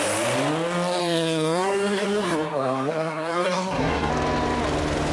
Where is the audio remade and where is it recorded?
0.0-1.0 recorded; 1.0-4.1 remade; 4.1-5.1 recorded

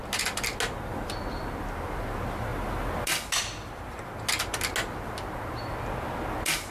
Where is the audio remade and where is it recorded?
0.0-6.7 recorded

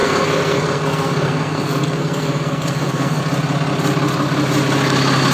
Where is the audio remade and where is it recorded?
0.0-3.2 remade; 3.2-5.3 recorded

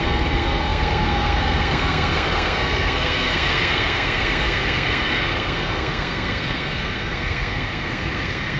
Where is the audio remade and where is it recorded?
0.0-8.6 remade

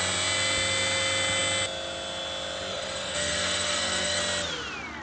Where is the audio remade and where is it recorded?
0.0-2.7 recorded; 2.7-4.2 remade; 4.2-5.0 recorded

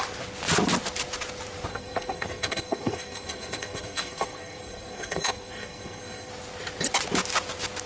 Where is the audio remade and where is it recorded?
0.0-1.7 recorded; 1.7-6.3 remade; 6.3-7.9 recorded

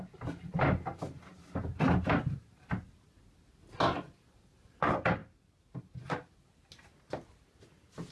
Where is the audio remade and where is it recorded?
0.0-8.1 recorded